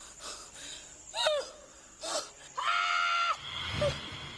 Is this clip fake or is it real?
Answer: real